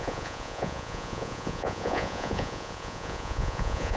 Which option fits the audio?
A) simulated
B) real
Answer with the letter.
A